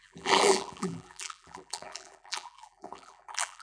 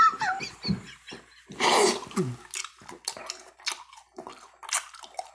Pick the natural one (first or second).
second